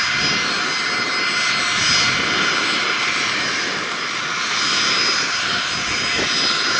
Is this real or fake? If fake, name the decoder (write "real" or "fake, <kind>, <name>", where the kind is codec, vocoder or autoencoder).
real